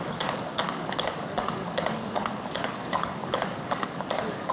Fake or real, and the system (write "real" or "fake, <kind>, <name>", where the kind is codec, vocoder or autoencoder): fake, codec, DAC